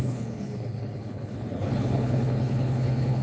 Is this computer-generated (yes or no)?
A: yes